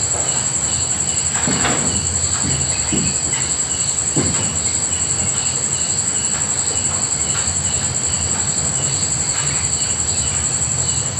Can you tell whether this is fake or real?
real